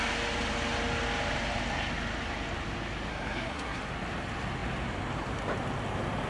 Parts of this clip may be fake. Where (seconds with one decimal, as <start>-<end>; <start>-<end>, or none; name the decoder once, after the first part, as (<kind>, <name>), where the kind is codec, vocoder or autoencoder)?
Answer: 3.1-3.8 (codec, SNAC)